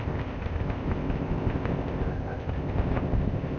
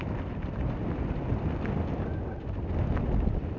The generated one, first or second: first